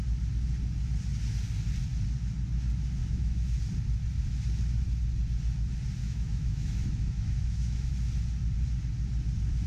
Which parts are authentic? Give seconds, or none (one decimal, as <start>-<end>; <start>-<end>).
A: 0.0-3.0; 3.6-6.0; 7.9-9.7